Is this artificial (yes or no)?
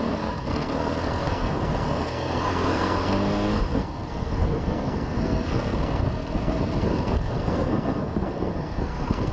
yes